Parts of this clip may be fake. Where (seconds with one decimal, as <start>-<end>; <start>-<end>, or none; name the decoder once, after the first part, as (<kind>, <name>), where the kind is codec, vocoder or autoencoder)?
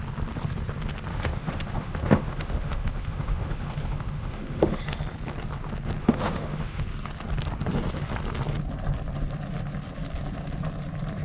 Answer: 1.1-4.8 (autoencoder, DAC-VAE); 6.0-6.8